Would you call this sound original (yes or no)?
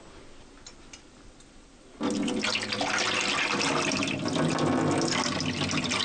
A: yes